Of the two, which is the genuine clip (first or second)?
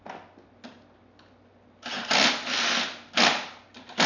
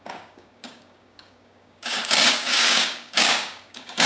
first